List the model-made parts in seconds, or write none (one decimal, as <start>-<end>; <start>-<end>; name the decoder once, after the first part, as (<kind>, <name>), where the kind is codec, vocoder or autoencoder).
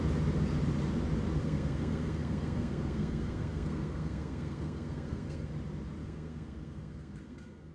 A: 1.4-5.5 (codec, SNAC); 6.0-7.7